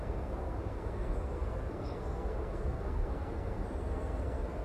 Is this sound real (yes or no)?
no